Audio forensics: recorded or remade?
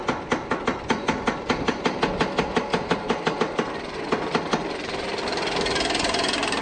recorded